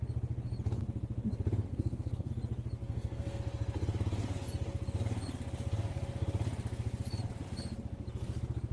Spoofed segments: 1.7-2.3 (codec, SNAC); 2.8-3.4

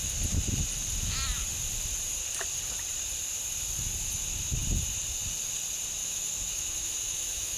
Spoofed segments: 6.0-7.6 (autoencoder, DAC-VAE)

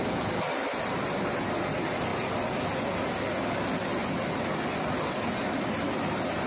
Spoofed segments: none